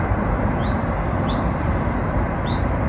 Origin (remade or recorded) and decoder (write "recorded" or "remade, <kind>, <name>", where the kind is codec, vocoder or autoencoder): remade, vocoder, BigVGAN v2